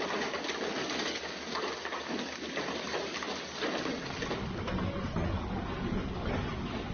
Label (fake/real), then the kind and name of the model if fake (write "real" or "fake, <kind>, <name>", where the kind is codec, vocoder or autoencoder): real